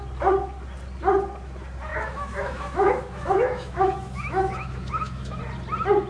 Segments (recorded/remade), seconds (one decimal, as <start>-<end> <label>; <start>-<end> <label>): 0.0-1.9 recorded; 1.9-5.4 remade; 5.4-6.1 recorded